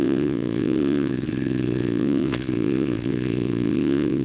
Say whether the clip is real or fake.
fake